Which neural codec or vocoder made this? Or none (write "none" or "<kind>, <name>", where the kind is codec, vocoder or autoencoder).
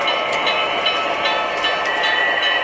none